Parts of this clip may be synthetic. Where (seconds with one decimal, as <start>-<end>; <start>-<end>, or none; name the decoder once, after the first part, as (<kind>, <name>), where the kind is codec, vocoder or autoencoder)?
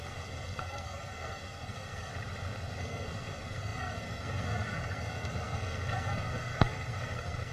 0.0-2.1 (codec, SNAC); 2.8-7.5